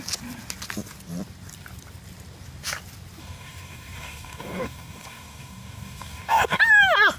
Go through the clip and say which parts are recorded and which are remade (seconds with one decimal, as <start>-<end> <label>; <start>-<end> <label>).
0.0-3.2 recorded; 3.2-6.6 remade; 6.6-7.2 recorded